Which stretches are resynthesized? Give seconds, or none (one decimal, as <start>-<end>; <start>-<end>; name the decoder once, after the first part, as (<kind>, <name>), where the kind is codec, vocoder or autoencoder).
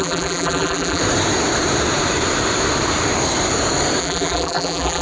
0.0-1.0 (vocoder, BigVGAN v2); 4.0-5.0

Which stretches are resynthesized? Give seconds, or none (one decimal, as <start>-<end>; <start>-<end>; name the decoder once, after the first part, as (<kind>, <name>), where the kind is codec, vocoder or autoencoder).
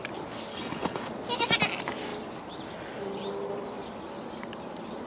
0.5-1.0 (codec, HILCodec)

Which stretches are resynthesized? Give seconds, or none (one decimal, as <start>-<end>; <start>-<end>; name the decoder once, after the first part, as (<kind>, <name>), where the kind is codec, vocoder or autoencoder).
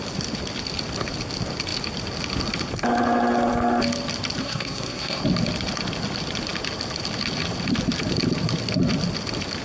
4.4-5.2 (codec, SNAC)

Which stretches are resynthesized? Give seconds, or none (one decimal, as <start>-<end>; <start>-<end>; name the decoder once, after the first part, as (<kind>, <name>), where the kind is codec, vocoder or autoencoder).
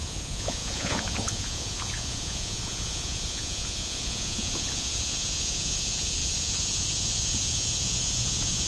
0.0-8.7 (vocoder, Vocos)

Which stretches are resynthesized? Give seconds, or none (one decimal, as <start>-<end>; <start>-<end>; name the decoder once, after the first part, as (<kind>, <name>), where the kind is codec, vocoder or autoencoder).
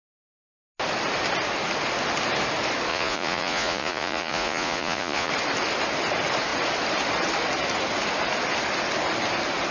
2.9-5.3 (vocoder, Vocos)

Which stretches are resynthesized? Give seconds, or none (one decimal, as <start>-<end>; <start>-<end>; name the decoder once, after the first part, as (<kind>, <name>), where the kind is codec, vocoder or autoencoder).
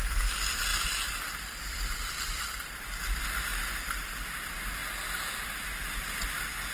0.7-2.7 (vocoder, BigVGAN v2)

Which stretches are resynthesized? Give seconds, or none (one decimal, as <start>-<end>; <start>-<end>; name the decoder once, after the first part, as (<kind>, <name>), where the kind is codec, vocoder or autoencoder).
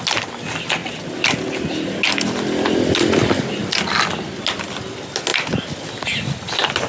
none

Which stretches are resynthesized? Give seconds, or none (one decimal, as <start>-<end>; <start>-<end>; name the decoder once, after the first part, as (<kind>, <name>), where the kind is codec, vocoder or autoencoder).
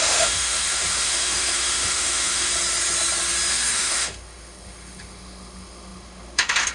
0.0-2.5 (autoencoder, DAC-VAE); 3.5-6.7